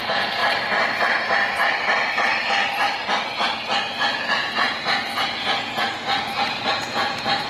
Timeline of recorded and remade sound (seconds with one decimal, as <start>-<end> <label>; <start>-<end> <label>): 0.0-0.4 remade; 0.4-4.3 recorded; 4.3-7.5 remade